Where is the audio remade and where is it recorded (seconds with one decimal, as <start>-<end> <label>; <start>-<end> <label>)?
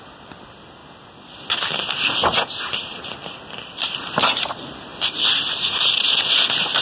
0.0-6.8 recorded